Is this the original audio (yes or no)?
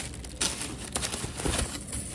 yes